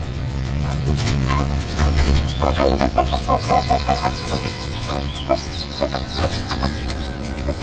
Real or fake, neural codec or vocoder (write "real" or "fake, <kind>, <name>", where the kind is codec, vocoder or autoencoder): fake, vocoder, WaveNeXt